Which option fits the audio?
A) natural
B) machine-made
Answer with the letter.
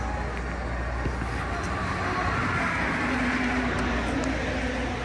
A